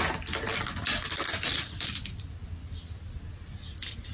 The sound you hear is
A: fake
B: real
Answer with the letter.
B